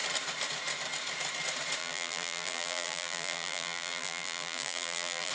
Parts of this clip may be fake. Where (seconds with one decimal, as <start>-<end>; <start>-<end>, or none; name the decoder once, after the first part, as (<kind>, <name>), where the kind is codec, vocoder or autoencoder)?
1.8-5.3 (vocoder, BigVGAN v2)